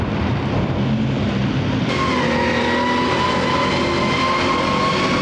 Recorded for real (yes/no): yes